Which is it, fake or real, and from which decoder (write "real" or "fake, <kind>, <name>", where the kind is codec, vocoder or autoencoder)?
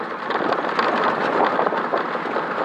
real